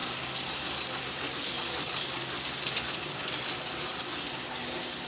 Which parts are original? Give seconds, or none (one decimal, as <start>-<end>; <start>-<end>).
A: 2.7-3.9